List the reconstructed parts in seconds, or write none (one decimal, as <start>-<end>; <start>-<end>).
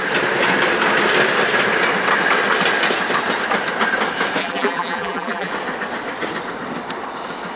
4.4-5.5